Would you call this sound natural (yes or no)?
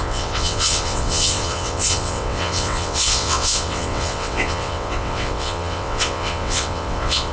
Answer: no